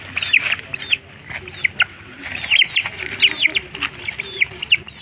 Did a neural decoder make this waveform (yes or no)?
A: no